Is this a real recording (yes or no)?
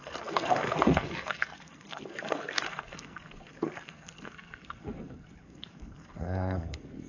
no